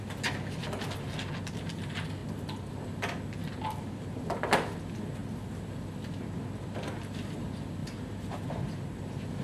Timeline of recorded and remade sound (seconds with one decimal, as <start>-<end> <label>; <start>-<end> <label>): 0.0-9.4 recorded